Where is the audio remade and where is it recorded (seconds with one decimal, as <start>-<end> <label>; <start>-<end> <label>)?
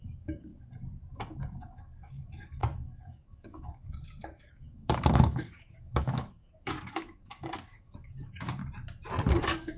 0.0-0.5 remade; 0.5-1.1 recorded; 1.1-8.6 remade; 8.6-9.4 recorded; 9.4-9.8 remade